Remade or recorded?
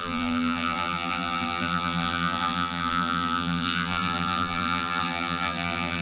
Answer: remade